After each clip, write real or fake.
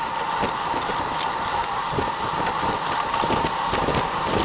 real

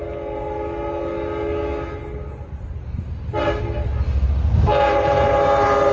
real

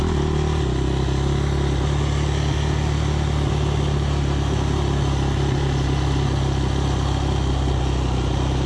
real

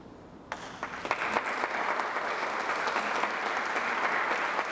real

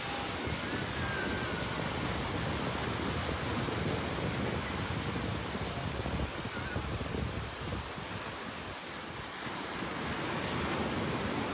real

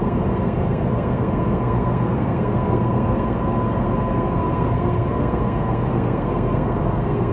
fake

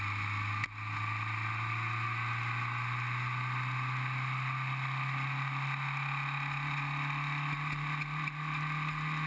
real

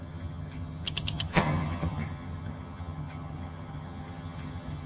fake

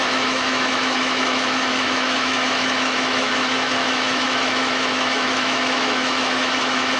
fake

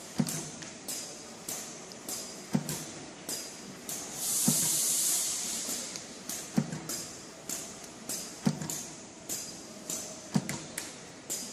fake